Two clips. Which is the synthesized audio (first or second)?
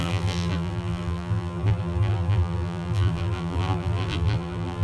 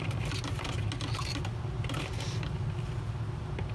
first